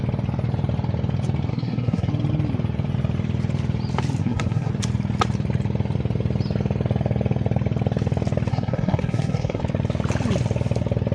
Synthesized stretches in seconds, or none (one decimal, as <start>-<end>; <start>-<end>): 1.5-2.1; 4.2-4.7; 8.5-9.6